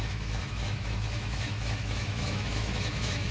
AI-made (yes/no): yes